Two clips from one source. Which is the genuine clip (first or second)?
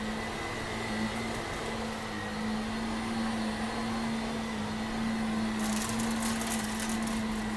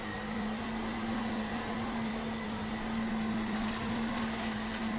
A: first